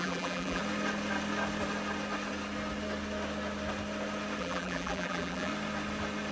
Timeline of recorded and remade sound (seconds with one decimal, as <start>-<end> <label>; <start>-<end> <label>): 0.0-0.6 remade; 0.6-4.4 recorded; 4.4-5.5 remade; 5.5-6.3 recorded